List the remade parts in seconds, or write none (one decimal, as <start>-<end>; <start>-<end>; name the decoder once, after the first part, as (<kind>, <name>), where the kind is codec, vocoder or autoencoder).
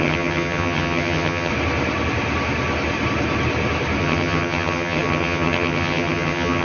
0.0-1.5 (vocoder, HiFi-GAN); 4.0-6.6